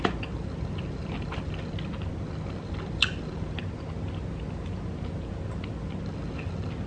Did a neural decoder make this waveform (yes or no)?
no